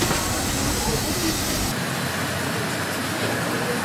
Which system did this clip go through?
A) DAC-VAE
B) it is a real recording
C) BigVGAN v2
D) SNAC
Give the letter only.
B